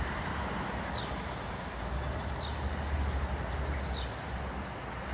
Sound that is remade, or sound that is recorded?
recorded